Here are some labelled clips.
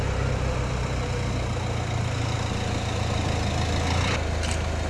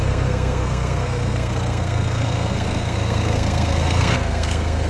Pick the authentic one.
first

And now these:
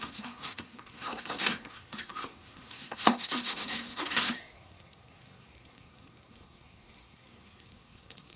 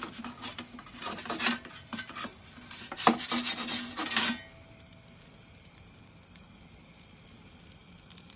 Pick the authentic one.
second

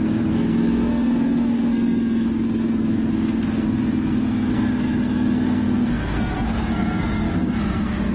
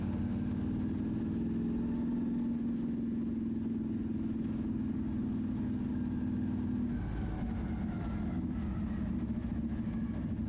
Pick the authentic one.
second